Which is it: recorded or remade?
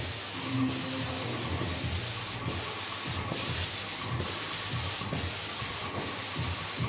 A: recorded